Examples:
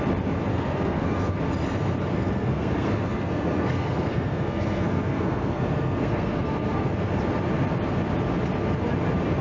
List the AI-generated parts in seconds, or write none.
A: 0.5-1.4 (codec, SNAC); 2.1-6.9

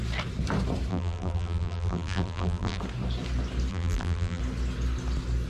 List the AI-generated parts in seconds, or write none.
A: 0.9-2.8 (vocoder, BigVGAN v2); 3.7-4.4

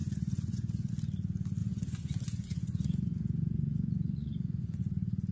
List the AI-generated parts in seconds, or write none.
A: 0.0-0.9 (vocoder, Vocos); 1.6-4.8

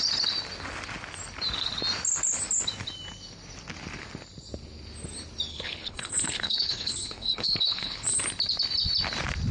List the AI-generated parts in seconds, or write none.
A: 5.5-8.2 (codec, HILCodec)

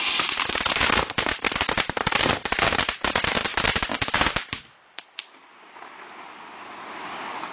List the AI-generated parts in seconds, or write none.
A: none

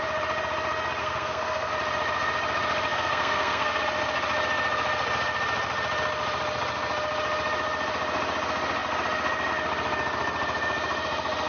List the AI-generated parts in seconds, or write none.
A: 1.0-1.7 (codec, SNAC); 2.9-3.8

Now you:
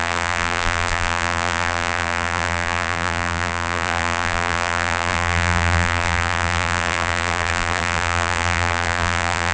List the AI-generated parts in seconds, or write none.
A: 0.0-9.5 (vocoder, BigVGAN v2)

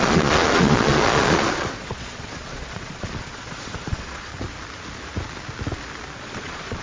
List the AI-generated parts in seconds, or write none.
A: 0.0-4.3 (vocoder, Vocos); 6.2-6.8